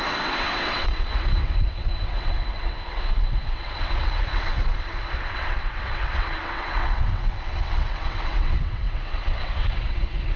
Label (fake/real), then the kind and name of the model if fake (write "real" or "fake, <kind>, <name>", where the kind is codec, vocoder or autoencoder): fake, vocoder, WaveNeXt